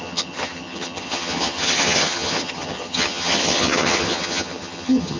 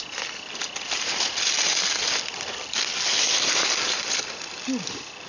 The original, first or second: second